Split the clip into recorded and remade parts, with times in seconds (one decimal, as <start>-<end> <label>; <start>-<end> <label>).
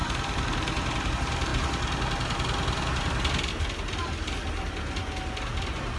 0.0-1.1 remade; 1.1-6.0 recorded